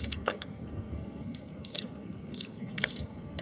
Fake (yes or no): yes